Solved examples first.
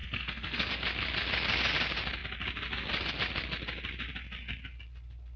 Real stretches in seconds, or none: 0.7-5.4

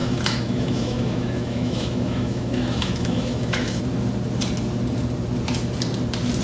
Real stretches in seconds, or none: 3.8-6.4

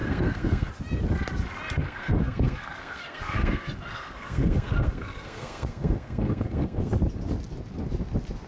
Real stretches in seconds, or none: 0.7-1.8; 6.9-8.5

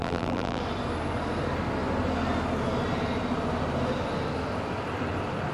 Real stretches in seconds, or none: 0.6-5.5

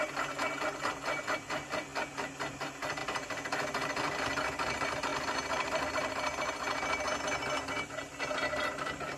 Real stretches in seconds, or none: 0.0-9.2

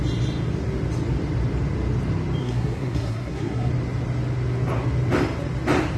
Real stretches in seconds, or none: 0.0-2.4; 3.7-6.0